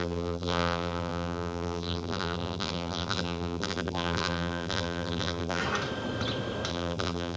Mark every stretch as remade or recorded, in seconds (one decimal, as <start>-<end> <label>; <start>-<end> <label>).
0.0-5.6 remade; 5.6-6.7 recorded; 6.7-7.4 remade